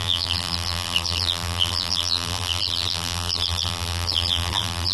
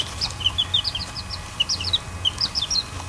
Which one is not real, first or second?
first